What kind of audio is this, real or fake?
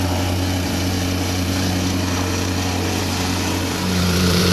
fake